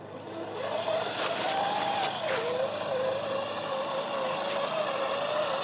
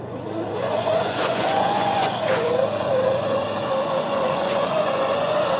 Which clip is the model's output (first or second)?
second